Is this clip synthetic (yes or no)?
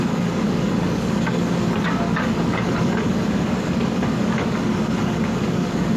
yes